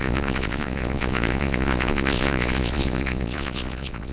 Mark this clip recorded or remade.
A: remade